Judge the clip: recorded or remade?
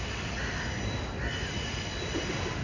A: recorded